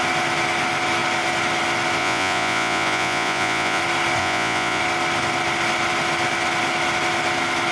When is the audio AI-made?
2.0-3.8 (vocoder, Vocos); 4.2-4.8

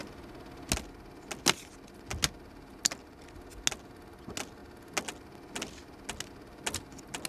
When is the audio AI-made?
none

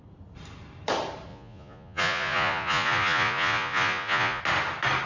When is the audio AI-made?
1.3-4.4 (vocoder, Vocos)